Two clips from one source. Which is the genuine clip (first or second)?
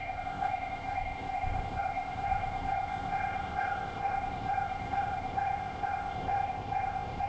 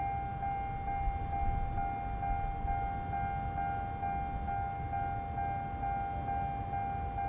second